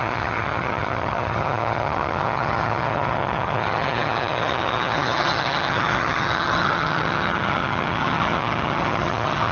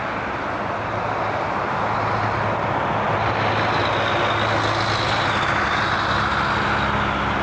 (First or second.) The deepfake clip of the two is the first